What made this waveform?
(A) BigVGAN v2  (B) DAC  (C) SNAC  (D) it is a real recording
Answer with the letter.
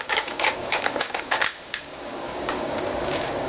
B